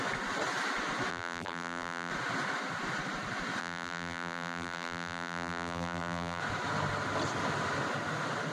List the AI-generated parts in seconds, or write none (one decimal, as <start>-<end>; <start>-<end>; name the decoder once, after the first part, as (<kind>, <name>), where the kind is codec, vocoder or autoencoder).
1.1-2.1 (vocoder, BigVGAN v2); 3.6-6.4

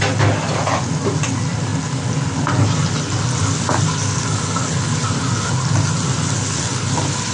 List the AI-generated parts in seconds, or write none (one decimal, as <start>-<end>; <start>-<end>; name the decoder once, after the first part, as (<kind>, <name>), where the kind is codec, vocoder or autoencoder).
none